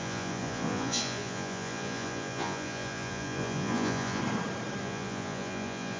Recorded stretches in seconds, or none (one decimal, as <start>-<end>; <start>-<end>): 4.2-4.8

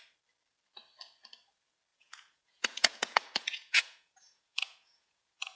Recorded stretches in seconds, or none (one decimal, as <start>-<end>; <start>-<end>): 0.0-1.9

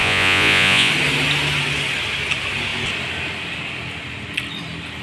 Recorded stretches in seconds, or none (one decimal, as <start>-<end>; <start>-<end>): 0.9-5.0